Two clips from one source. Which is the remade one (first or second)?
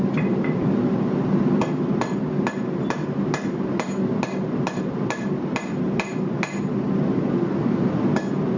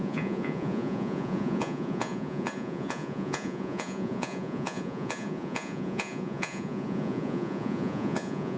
second